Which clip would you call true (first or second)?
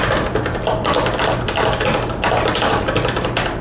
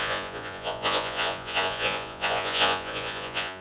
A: first